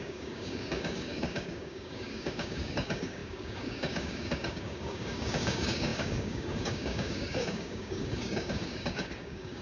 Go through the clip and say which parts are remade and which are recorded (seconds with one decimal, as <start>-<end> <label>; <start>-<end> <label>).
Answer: 0.0-9.6 remade